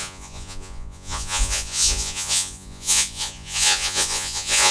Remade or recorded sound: remade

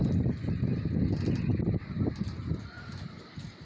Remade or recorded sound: recorded